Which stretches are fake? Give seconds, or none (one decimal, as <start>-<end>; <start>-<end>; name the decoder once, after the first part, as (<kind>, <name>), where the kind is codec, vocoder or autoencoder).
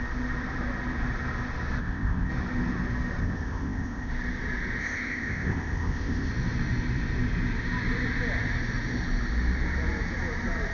1.8-2.3 (codec, ZipCodec); 3.2-4.1; 4.8-6.3